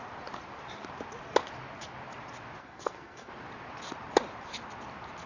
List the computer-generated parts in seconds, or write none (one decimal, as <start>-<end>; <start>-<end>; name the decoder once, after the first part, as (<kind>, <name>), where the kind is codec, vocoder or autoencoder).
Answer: 2.6-3.3 (codec, SNAC)